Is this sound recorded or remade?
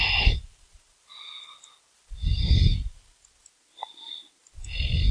recorded